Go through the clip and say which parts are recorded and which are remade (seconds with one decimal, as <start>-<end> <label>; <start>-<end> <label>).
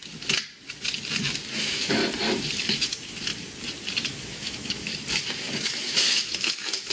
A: 0.0-1.5 recorded; 1.5-2.0 remade; 2.0-2.7 recorded; 2.7-3.3 remade; 3.3-4.1 recorded; 4.1-4.9 remade; 4.9-5.4 recorded; 5.4-6.9 remade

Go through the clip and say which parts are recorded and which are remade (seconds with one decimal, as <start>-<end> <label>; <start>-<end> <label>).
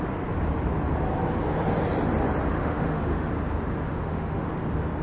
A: 0.0-2.6 recorded; 2.6-3.3 remade; 3.3-3.9 recorded; 3.9-4.5 remade; 4.5-5.0 recorded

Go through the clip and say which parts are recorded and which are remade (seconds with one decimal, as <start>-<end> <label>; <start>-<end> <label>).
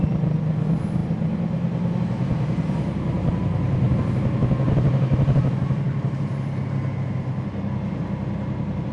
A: 0.0-8.9 recorded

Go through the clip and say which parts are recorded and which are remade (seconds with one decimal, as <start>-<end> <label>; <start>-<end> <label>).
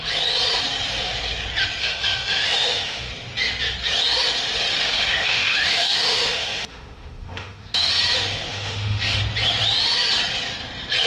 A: 0.0-1.8 recorded; 1.8-3.1 remade; 3.1-4.8 recorded; 4.8-7.9 remade; 7.9-8.5 recorded; 8.5-9.2 remade; 9.2-11.1 recorded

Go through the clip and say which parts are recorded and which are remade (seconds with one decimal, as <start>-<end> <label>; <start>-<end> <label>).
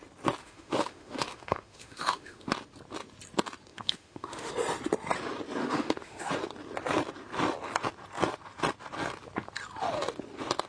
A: 0.0-0.4 recorded; 0.4-2.5 remade; 2.5-3.7 recorded; 3.7-4.5 remade; 4.5-5.6 recorded; 5.6-6.3 remade; 6.3-10.7 recorded